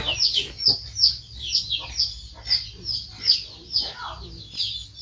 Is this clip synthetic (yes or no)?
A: no